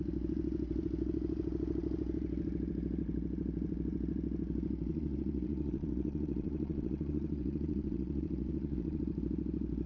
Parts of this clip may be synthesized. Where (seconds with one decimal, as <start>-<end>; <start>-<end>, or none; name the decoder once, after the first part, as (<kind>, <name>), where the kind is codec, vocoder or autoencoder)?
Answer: 4.9-9.0 (vocoder, Vocos)